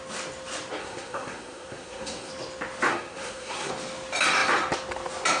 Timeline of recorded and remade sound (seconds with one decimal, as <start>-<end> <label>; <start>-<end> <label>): 0.0-0.8 recorded; 0.8-2.3 remade; 2.3-2.9 recorded; 2.9-3.7 remade; 3.7-5.4 recorded